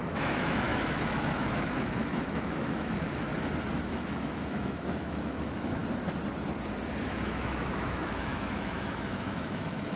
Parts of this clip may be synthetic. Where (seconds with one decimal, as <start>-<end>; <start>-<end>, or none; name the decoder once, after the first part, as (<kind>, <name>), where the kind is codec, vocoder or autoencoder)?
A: 0.0-3.3 (autoencoder, DAC-VAE); 3.9-5.8; 7.0-10.0